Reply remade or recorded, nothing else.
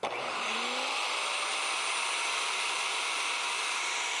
recorded